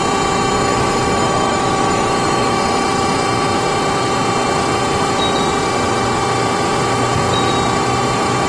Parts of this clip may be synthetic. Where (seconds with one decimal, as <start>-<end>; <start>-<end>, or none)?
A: 0.7-2.6